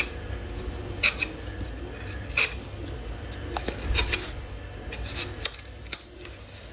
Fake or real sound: real